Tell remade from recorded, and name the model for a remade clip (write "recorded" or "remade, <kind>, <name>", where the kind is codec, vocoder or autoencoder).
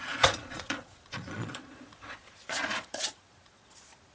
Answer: remade, vocoder, Vocos